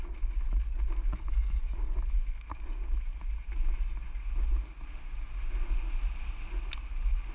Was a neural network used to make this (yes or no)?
no